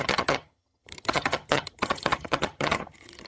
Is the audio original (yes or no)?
no